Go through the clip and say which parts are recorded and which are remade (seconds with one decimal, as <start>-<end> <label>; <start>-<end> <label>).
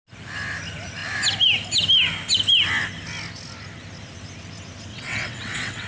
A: 0.0-4.9 recorded; 4.9-5.9 remade